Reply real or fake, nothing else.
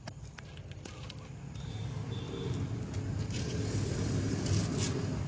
real